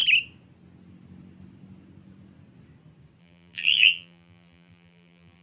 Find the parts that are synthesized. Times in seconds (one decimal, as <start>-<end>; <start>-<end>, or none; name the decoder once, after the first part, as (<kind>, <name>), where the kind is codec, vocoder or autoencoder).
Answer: 3.2-5.4 (vocoder, BigVGAN v2)